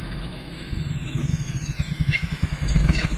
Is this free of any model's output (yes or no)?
no